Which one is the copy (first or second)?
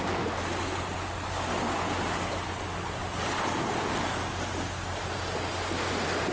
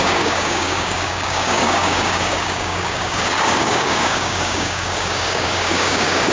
second